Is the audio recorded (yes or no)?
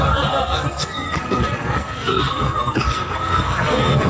no